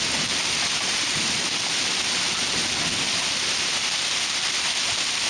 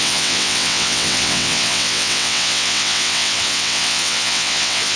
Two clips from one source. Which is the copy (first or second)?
second